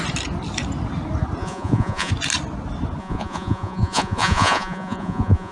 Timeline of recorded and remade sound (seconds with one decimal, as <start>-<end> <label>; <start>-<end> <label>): 0.0-1.4 recorded; 1.4-2.1 remade; 2.1-3.0 recorded; 3.0-5.5 remade